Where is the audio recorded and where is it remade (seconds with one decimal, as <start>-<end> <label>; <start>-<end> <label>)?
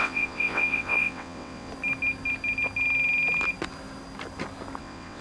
0.0-1.7 remade; 1.7-4.8 recorded; 4.8-5.2 remade